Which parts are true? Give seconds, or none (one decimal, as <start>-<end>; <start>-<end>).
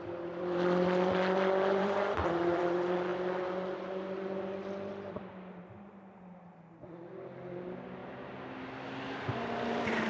3.1-4.9; 8.0-8.6